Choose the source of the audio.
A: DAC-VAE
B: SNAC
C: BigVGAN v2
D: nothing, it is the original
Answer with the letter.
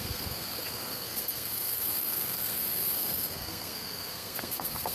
B